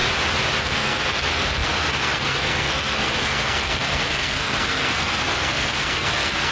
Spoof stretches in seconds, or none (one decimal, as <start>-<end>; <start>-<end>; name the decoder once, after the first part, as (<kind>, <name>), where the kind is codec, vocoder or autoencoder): 0.6-6.5 (codec, SNAC)